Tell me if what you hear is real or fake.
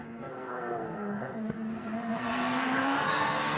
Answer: fake